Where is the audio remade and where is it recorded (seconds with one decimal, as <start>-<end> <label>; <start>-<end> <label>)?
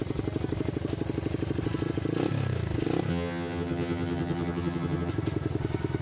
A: 0.0-3.1 recorded; 3.1-5.1 remade; 5.1-6.0 recorded